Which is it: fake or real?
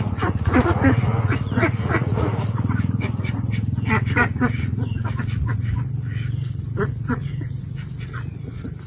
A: fake